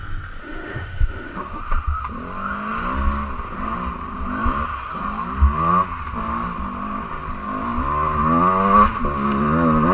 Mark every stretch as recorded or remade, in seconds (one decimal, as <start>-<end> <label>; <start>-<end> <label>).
0.0-0.4 recorded; 0.4-1.6 remade; 1.6-9.9 recorded